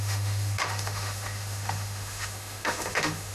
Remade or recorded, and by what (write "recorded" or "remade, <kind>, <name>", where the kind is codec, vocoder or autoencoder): remade, autoencoder, DAC-VAE